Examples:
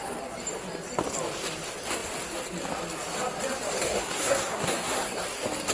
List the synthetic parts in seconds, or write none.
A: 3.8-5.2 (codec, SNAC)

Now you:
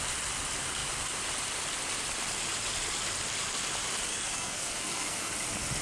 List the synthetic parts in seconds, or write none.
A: 4.1-5.3 (codec, SNAC)

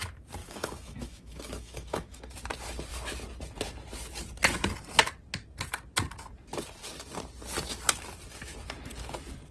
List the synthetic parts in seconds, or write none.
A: 0.4-2.3 (autoencoder, DAC-VAE)

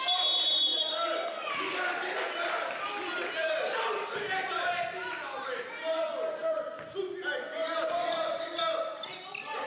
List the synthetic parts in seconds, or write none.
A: 0.7-4.7 (vocoder, BigVGAN v2); 6.4-7.0; 7.6-8.8

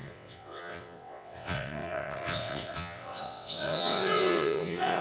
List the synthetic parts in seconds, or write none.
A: 0.0-5.0 (vocoder, WaveNeXt)